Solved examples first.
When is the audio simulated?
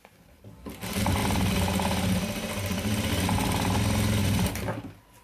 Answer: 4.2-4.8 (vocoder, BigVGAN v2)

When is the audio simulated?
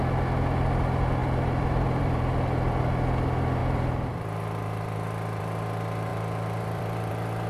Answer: 1.2-2.8 (vocoder, BigVGAN v2); 3.6-5.4; 6.1-7.1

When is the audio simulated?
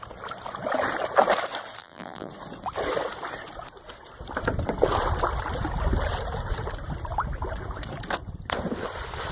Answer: 1.8-2.3 (vocoder, BigVGAN v2)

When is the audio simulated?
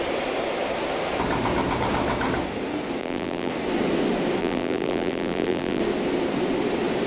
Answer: 3.0-3.5 (vocoder, BigVGAN v2); 4.4-5.8